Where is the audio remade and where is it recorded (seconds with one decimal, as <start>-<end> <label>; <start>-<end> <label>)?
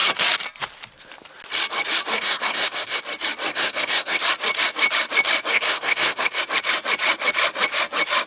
0.0-2.1 recorded; 2.1-3.0 remade; 3.0-3.5 recorded; 3.5-4.2 remade; 4.2-5.5 recorded; 5.5-6.4 remade; 6.4-8.3 recorded